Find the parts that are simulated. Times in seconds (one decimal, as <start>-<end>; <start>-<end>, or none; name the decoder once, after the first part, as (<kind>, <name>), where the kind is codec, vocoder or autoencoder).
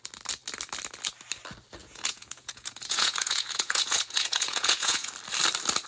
1.8-5.1 (vocoder, Vocos)